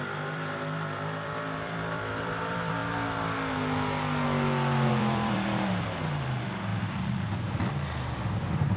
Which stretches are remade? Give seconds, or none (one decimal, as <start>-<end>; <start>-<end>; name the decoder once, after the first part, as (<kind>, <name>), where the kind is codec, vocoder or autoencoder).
0.0-2.8 (vocoder, BigVGAN v2); 4.9-8.8